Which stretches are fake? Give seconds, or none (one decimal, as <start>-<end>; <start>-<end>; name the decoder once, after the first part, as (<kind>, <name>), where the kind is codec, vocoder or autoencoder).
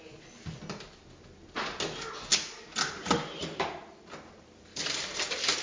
none